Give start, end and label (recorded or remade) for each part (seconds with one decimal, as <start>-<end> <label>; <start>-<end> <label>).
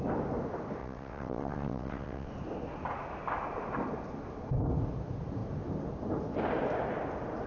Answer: 0.0-0.8 recorded; 0.8-2.3 remade; 2.3-7.5 recorded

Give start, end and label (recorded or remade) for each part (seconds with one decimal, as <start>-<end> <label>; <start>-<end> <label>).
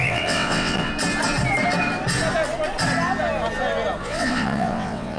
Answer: 0.0-0.9 remade; 0.9-4.0 recorded; 4.0-5.2 remade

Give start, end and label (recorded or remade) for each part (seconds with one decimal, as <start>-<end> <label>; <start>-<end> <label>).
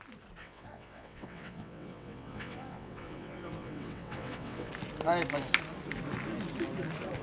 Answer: 0.0-0.4 recorded; 0.4-4.7 remade; 4.7-7.2 recorded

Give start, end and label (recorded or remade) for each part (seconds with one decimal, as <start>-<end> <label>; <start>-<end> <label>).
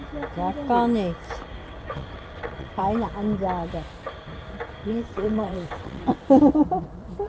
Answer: 0.0-1.6 recorded; 1.6-2.8 remade; 2.8-4.8 recorded; 4.8-6.4 remade; 6.4-7.3 recorded